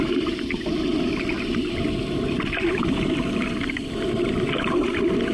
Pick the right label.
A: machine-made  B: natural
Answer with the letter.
B